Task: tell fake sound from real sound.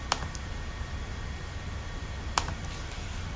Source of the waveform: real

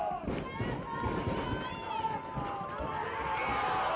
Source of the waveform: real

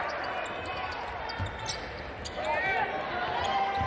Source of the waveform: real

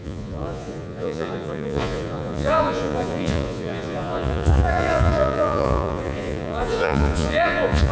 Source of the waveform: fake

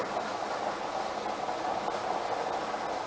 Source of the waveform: real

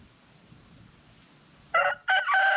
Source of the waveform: real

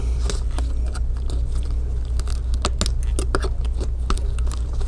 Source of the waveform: real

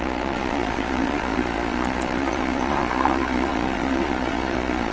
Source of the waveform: fake